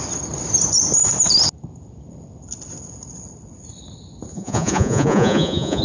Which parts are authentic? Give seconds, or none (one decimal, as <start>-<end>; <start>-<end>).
0.0-4.3